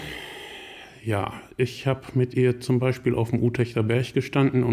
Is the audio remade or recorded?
recorded